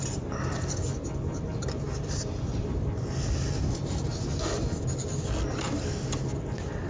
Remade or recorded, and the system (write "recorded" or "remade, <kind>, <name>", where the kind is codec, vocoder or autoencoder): recorded